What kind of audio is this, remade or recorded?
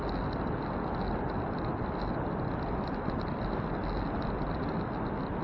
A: recorded